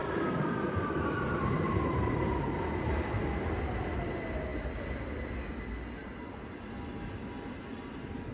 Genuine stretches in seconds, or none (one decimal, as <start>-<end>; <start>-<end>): 2.4-6.0; 6.6-8.3